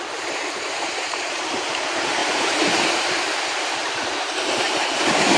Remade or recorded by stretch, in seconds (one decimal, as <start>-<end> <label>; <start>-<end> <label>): 0.0-5.4 remade